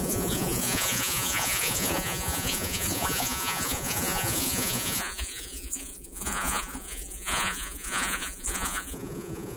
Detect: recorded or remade remade